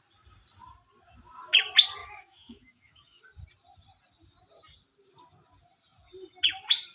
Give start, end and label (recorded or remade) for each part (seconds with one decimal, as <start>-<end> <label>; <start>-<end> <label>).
0.0-2.0 recorded; 2.0-3.2 remade; 3.2-6.9 recorded

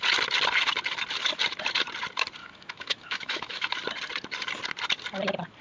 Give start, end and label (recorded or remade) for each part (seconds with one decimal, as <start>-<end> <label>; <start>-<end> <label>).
0.0-2.4 recorded; 2.4-3.7 remade; 3.7-5.6 recorded

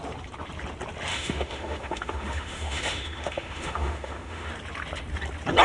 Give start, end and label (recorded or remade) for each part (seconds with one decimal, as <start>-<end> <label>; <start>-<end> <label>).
0.0-1.1 recorded; 1.1-4.5 remade; 4.5-5.6 recorded

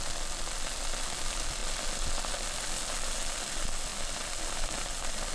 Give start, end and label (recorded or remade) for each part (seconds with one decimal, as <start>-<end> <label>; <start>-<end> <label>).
0.0-5.3 recorded

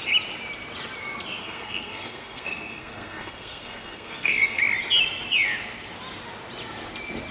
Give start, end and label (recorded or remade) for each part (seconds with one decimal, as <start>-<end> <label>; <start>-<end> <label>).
0.0-1.4 recorded; 1.4-4.6 remade; 4.6-7.3 recorded

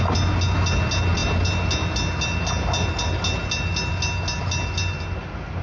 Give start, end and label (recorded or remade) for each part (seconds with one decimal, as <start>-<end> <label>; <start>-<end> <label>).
0.0-5.6 recorded

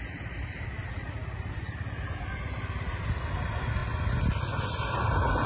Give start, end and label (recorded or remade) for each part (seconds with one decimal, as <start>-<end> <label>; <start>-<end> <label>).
0.0-5.5 recorded